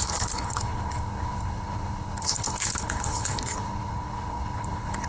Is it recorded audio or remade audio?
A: remade